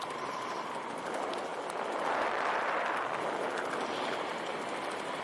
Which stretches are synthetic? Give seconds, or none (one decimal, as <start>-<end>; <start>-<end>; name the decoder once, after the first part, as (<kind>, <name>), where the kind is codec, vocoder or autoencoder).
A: none